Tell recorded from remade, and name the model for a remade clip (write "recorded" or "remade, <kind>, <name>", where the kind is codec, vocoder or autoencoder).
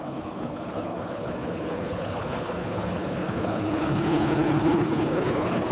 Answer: remade, codec, HILCodec